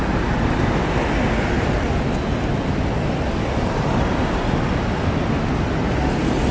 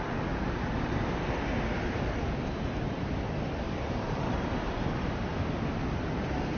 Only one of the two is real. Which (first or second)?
first